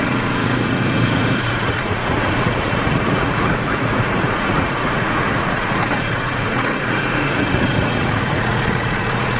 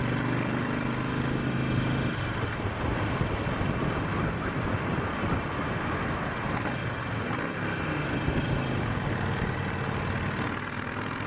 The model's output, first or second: first